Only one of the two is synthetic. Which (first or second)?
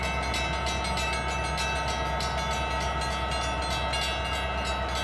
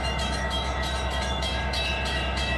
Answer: second